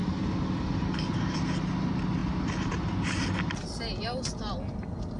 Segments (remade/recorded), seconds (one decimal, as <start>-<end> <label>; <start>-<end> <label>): 0.0-5.2 recorded